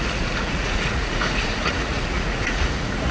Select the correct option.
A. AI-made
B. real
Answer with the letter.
A